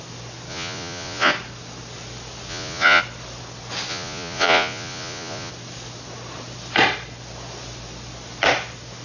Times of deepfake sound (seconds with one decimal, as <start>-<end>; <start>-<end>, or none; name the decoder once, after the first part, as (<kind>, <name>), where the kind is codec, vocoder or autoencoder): 0.5-1.3 (vocoder, Vocos); 2.5-3.0; 3.9-5.5